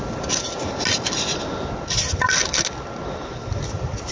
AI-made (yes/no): no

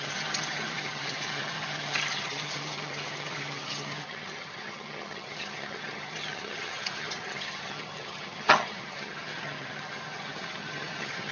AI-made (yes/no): yes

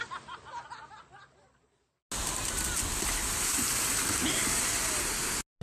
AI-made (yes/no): no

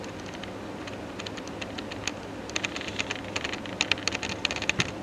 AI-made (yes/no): no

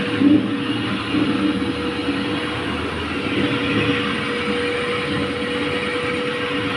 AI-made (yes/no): no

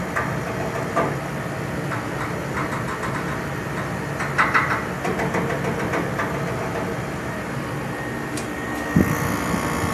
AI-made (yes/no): no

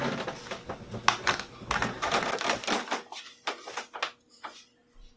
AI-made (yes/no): no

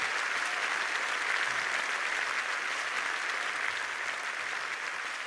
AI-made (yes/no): no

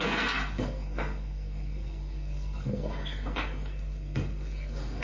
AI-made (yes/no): yes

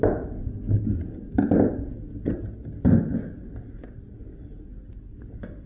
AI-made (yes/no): no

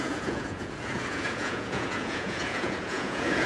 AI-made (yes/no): yes